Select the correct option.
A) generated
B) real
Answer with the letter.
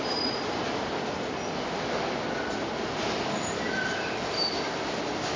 B